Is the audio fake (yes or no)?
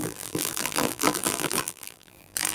yes